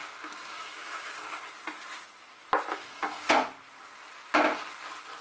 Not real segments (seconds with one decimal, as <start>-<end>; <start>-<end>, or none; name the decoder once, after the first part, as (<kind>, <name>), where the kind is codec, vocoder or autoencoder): 0.0-1.4 (codec, DAC); 2.7-3.3